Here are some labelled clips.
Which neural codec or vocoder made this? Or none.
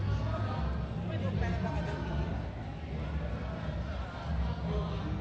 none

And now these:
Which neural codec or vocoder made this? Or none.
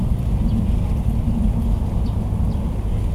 none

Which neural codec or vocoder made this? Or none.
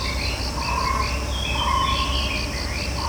none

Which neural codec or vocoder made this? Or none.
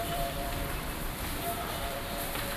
vocoder, BigVGAN v2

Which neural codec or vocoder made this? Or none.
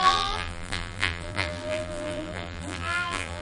vocoder, BigVGAN v2